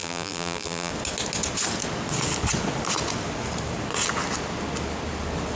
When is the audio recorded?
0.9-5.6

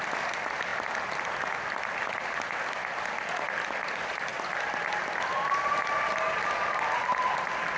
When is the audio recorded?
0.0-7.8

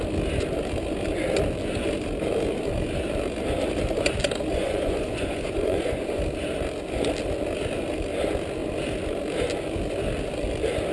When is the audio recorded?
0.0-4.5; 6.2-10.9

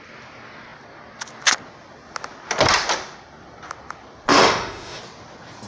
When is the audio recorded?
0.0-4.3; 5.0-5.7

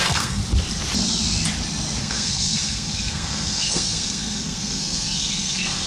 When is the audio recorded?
0.4-2.0